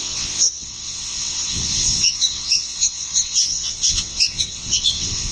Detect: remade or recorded remade